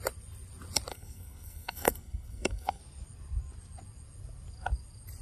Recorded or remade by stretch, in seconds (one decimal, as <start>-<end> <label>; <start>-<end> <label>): 0.0-0.9 recorded; 0.9-2.8 remade; 2.8-5.2 recorded